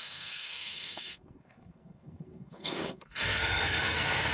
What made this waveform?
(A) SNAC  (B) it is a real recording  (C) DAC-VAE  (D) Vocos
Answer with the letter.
A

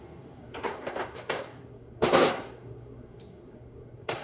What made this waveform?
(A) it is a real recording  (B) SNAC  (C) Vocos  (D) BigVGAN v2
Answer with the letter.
B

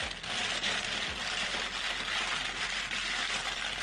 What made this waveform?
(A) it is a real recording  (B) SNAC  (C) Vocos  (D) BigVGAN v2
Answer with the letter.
A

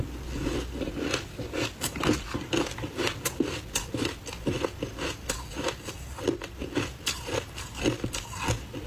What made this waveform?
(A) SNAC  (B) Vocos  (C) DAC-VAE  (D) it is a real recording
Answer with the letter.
D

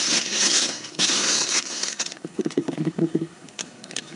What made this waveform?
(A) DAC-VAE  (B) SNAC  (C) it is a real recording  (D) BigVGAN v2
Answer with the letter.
B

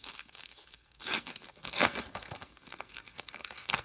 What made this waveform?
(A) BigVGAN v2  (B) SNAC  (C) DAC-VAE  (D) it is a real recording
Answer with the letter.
B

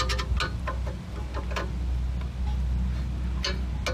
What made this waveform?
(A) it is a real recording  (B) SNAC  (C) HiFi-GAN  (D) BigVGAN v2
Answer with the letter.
A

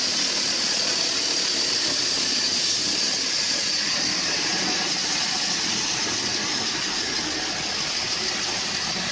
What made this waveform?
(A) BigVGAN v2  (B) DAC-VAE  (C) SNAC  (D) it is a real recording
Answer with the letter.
D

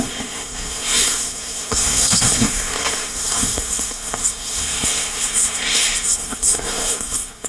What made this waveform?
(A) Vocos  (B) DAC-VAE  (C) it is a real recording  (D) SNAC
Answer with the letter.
D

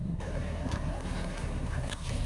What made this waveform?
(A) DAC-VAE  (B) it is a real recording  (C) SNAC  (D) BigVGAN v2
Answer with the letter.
C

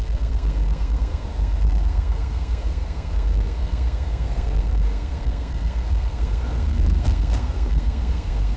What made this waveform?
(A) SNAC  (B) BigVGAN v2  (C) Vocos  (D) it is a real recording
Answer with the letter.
A